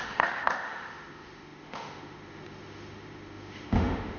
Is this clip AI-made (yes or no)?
yes